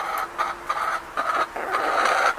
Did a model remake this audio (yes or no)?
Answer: no